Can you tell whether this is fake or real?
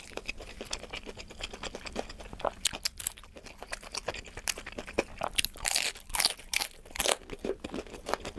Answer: real